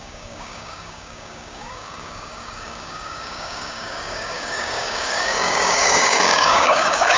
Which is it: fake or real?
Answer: fake